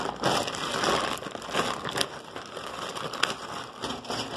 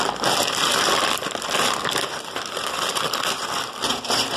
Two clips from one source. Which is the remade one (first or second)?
second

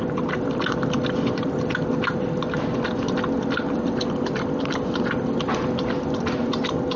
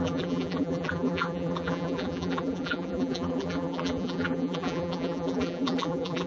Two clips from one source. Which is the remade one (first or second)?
second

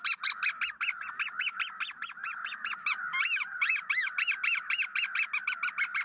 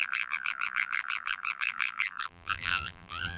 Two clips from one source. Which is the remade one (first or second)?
second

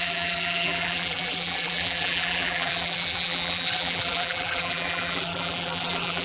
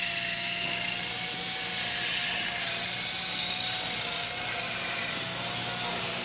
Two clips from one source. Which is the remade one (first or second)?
first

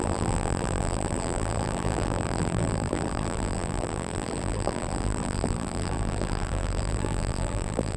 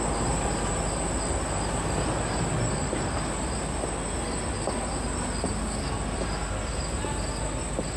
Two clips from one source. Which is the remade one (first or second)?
first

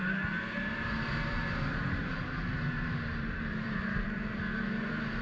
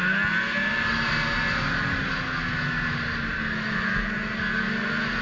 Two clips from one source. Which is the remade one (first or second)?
first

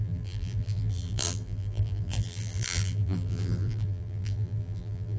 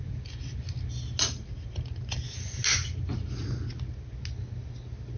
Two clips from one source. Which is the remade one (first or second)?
first